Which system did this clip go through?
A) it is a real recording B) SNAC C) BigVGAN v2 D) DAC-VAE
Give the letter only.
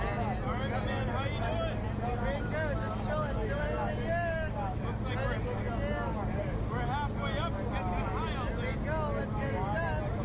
A